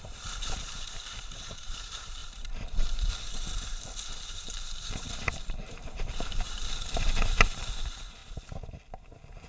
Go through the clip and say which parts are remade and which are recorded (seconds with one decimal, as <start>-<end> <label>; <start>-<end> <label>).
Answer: 0.0-8.2 remade; 8.2-9.5 recorded